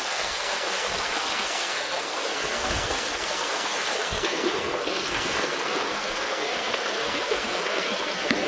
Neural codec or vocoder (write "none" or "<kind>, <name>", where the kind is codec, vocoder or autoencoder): codec, SNAC